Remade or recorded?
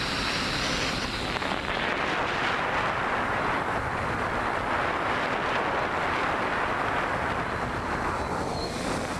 recorded